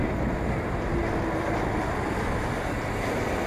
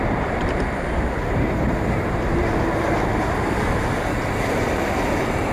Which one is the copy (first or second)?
second